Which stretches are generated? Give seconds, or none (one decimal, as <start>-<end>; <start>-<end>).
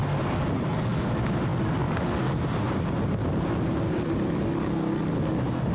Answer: none